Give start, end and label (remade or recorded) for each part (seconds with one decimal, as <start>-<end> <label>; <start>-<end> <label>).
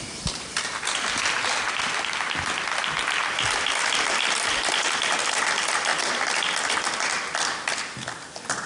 0.0-8.7 recorded